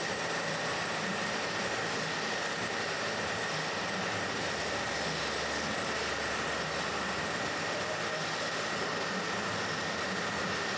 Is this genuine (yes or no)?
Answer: yes